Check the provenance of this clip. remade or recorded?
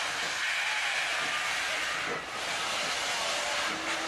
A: recorded